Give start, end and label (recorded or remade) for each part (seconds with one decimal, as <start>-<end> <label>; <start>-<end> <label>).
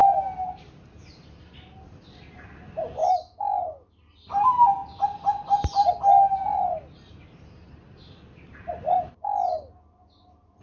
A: 0.0-3.0 recorded; 3.0-3.6 remade; 3.6-10.6 recorded